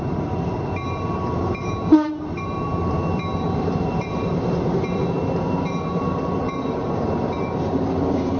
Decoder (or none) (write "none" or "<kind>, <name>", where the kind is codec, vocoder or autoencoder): vocoder, BigVGAN v2